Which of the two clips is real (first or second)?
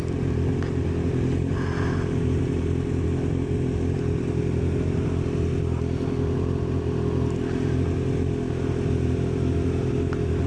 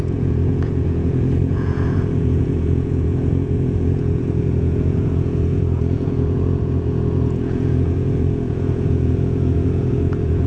first